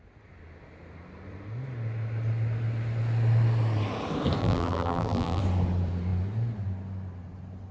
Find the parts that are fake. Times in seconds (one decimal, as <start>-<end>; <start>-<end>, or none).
4.4-5.4